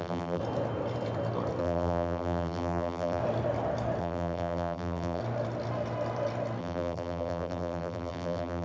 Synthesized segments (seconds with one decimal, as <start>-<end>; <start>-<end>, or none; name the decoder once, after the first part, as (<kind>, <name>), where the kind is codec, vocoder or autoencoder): 0.0-0.4 (vocoder, BigVGAN v2); 1.6-3.2; 4.0-5.2; 6.6-8.6